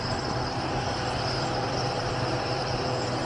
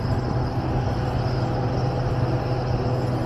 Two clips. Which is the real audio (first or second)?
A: second